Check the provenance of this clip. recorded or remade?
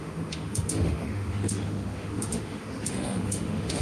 remade